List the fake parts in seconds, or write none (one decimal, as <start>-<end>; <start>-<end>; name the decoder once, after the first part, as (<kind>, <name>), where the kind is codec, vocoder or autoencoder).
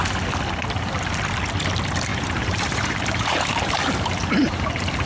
2.1-4.6 (vocoder, BigVGAN v2)